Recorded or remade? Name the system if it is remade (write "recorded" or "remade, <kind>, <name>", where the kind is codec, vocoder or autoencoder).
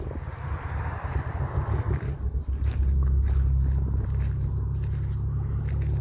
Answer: recorded